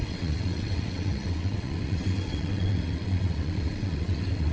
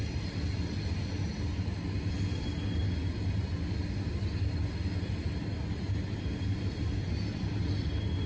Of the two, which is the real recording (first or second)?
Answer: second